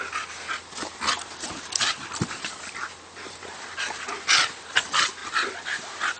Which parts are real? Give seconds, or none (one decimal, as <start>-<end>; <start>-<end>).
0.0-6.2